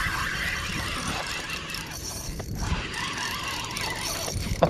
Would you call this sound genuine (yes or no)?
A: no